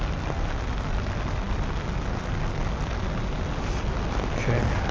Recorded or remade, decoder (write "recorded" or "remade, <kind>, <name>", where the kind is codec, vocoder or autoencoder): recorded